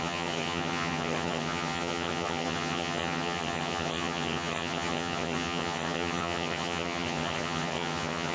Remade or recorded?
remade